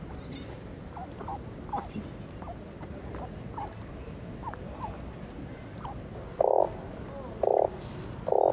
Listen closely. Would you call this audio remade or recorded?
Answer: recorded